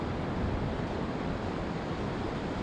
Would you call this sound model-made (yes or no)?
no